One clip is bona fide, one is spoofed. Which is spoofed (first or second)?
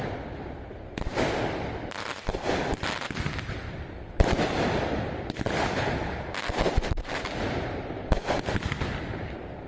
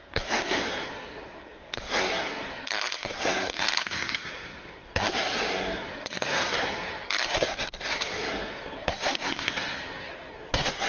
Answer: second